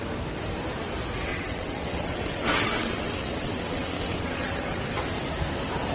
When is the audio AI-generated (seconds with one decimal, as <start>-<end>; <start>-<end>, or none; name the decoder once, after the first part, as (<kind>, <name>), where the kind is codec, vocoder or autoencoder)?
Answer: 1.3-4.8 (vocoder, WaveNeXt)

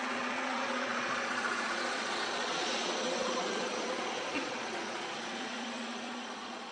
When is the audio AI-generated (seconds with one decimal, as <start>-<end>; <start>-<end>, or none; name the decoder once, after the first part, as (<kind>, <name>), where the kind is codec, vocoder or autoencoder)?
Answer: 0.0-6.7 (vocoder, Vocos)

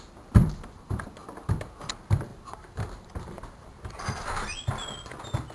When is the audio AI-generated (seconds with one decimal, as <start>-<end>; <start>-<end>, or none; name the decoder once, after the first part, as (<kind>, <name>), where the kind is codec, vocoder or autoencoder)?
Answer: 0.4-1.1 (vocoder, BigVGAN v2); 2.3-3.7

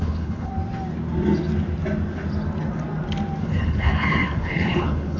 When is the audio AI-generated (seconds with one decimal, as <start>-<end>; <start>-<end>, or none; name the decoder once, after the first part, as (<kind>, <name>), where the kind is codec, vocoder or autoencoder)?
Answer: 0.0-0.5 (codec, HILCodec); 3.4-5.2

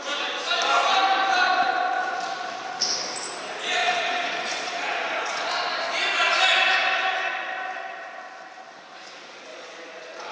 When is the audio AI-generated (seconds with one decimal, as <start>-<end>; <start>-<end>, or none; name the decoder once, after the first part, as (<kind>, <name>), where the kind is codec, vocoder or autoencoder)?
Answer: 3.8-5.5 (vocoder, Vocos); 9.5-10.3

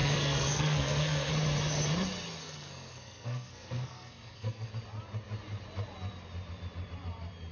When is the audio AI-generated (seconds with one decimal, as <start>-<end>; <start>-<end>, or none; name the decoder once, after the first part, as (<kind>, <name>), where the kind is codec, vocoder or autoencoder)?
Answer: 0.0-1.3 (codec, SNAC); 2.4-4.7